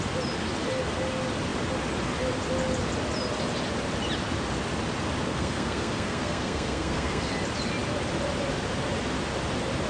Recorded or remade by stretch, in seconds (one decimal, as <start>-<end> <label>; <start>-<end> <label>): 0.0-5.3 recorded; 5.3-7.3 remade; 7.3-9.9 recorded